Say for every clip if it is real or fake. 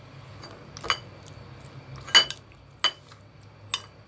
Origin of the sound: real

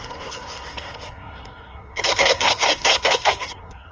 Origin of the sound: fake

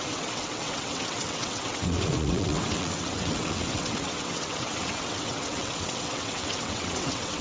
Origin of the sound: fake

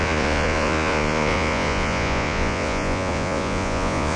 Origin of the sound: fake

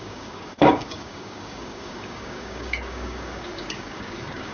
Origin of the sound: fake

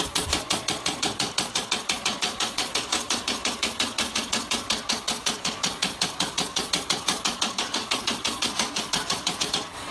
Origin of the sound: fake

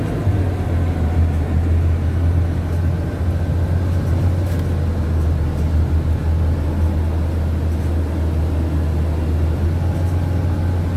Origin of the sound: real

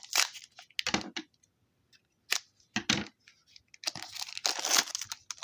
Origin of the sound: real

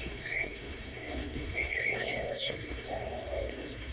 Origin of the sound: fake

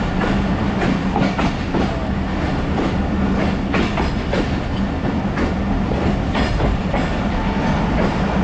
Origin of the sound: real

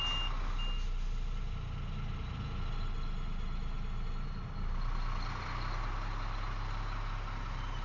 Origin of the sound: real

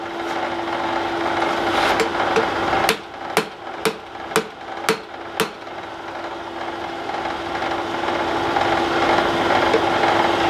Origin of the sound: real